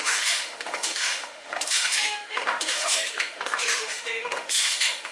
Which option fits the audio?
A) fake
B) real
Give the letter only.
A